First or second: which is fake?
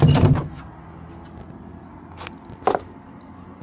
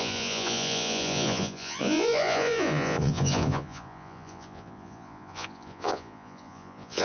second